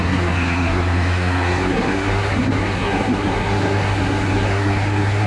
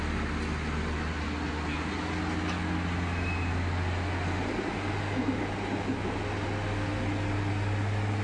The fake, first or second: first